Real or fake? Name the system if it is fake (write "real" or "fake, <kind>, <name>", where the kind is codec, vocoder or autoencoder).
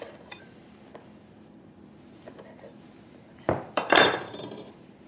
fake, vocoder, BigVGAN v2